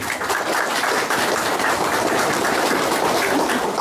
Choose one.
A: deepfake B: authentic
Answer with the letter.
B